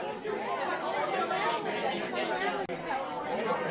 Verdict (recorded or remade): recorded